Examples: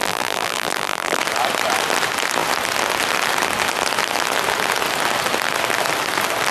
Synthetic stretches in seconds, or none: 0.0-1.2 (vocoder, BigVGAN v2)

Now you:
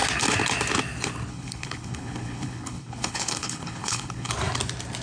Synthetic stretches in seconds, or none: 1.3-4.3 (codec, HILCodec)

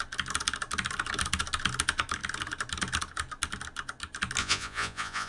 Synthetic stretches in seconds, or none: 4.4-5.3 (vocoder, Vocos)

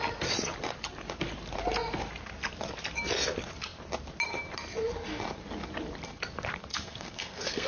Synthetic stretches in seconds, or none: 6.7-7.7 (codec, SNAC)

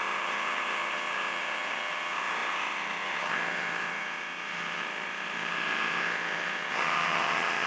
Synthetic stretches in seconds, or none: 0.0-7.7 (vocoder, HiFi-GAN)

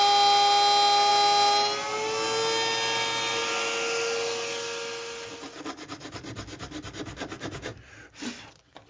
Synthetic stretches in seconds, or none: none